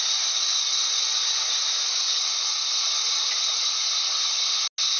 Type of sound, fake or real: real